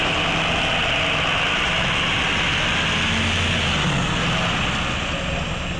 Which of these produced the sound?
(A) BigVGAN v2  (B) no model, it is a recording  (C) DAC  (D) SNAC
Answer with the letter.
B